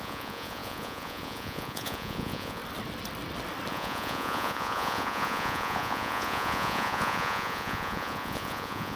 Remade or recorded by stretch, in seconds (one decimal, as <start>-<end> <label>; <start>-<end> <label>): 0.0-2.6 remade; 2.6-3.7 recorded; 3.7-9.0 remade